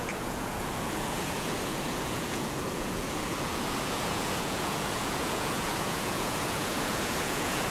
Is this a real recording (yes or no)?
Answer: no